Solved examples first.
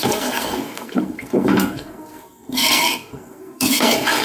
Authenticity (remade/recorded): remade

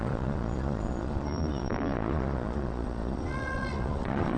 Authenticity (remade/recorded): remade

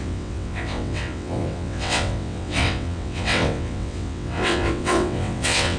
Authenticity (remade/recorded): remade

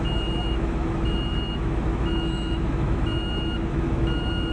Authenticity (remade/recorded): remade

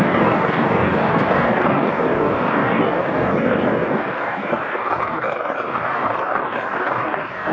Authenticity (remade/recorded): remade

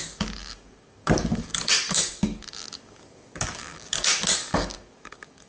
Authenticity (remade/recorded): remade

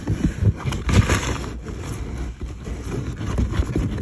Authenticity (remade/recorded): recorded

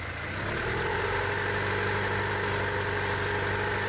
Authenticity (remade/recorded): recorded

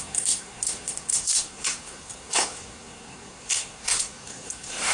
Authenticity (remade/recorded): remade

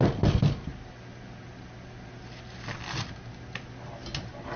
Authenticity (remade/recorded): recorded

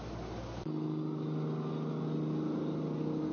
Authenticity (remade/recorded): recorded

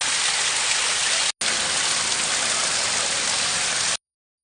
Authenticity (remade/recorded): recorded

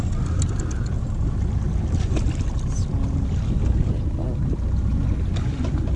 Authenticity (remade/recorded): recorded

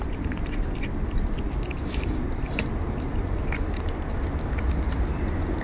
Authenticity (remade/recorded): recorded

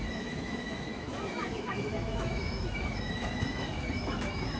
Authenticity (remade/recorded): remade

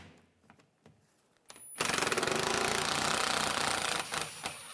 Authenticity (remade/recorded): recorded